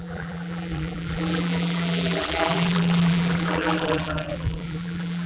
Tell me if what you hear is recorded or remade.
remade